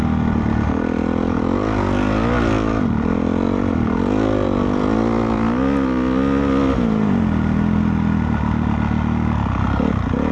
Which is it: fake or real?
real